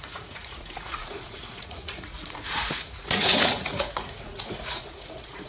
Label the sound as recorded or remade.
remade